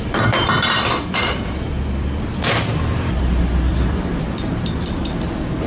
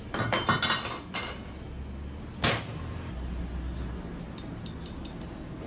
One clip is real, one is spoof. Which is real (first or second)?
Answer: second